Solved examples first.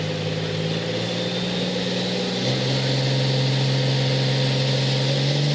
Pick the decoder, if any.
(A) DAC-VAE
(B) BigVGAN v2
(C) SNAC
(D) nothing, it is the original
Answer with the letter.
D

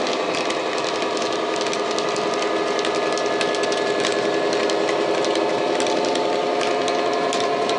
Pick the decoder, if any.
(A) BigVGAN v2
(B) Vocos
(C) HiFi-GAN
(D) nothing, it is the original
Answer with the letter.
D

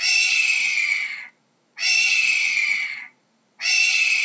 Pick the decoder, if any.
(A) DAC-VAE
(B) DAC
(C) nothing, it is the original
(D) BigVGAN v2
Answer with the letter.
C